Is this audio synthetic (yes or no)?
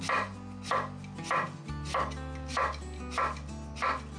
no